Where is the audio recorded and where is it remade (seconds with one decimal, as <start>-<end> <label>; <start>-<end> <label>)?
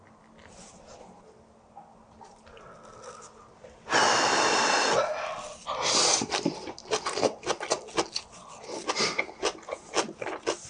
0.0-10.7 recorded